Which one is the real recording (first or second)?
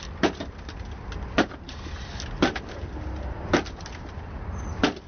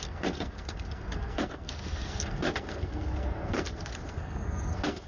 first